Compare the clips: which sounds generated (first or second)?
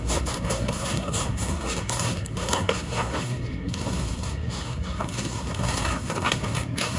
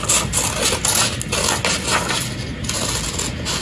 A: first